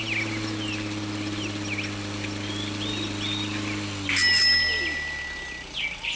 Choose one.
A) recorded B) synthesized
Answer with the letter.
A